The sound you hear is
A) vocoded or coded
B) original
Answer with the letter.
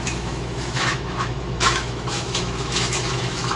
A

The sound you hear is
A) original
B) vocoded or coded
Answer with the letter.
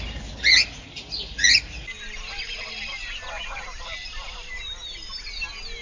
A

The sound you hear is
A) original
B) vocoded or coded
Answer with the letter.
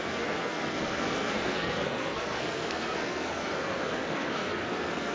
B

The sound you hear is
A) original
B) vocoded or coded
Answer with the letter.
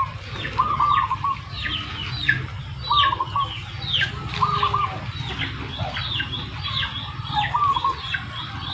A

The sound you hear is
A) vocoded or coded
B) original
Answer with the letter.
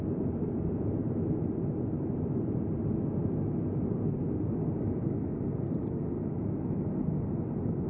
B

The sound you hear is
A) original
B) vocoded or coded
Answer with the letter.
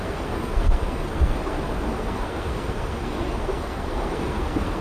B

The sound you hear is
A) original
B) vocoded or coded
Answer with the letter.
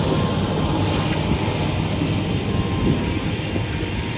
A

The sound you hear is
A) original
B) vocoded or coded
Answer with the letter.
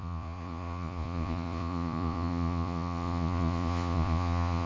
B